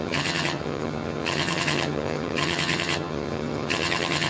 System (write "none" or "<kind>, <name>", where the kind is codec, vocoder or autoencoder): vocoder, HiFi-GAN